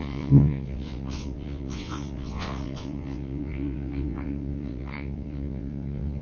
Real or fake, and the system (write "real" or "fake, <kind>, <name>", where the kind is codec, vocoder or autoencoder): fake, vocoder, WaveNeXt